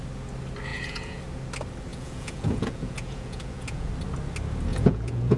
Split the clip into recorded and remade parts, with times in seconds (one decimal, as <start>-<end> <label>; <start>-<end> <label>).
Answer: 0.0-0.7 recorded; 0.7-1.2 remade; 1.2-1.9 recorded; 1.9-3.9 remade; 3.9-4.7 recorded; 4.7-5.4 remade